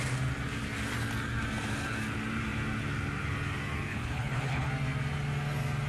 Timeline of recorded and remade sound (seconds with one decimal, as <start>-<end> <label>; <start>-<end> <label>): 0.0-3.9 recorded; 3.9-4.7 remade; 4.7-5.9 recorded